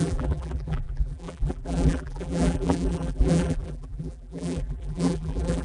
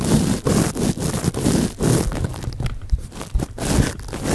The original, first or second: second